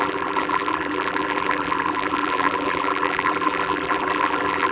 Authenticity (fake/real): fake